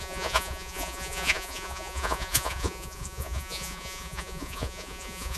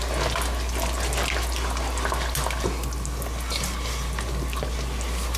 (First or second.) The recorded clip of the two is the second